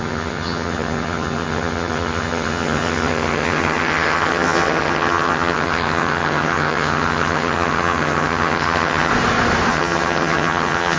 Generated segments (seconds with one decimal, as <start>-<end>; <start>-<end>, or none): 0.0-9.1; 9.7-11.0